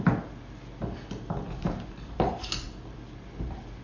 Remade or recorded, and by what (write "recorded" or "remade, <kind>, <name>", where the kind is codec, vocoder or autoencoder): recorded